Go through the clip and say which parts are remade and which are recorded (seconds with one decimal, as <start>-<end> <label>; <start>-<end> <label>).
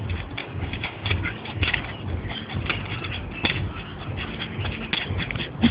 0.0-0.4 recorded; 0.4-1.6 remade; 1.6-5.7 recorded